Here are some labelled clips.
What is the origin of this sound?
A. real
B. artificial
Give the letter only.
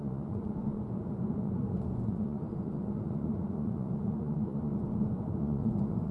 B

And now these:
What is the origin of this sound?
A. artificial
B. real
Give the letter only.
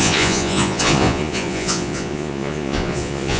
A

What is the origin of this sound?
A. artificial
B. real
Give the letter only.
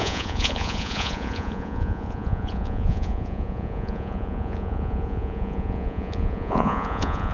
A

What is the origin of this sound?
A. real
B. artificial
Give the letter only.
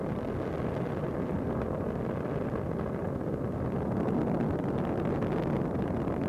A